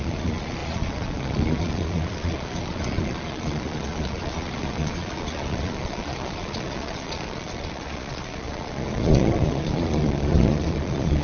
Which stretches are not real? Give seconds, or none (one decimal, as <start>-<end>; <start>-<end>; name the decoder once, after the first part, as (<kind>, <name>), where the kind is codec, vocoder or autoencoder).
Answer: 0.0-11.2 (vocoder, Vocos)